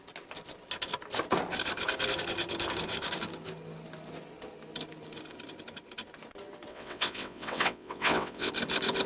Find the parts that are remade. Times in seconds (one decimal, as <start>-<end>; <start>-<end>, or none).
6.7-8.5